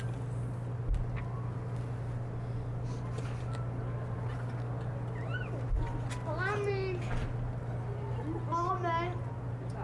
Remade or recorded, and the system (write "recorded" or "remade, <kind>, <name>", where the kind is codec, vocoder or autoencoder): recorded